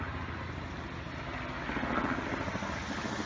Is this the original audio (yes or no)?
yes